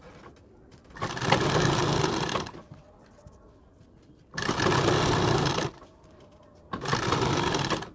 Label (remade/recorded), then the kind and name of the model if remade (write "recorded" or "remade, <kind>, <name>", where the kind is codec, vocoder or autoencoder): recorded